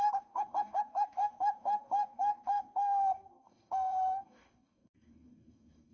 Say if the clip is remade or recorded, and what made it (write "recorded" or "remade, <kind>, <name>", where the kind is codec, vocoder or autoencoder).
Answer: remade, codec, DAC